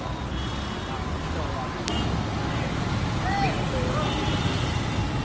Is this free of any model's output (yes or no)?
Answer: yes